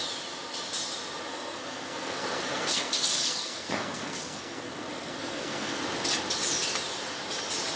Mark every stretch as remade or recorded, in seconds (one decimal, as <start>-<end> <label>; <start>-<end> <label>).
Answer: 0.0-1.3 recorded; 1.3-5.8 remade; 5.8-7.8 recorded